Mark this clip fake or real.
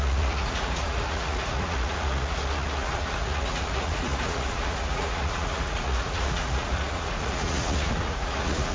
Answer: fake